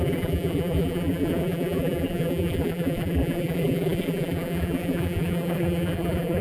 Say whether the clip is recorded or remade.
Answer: remade